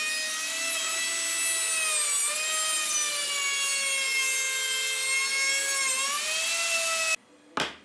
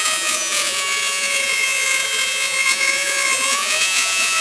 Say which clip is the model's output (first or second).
second